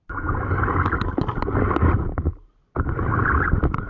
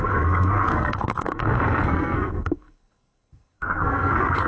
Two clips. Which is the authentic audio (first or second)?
first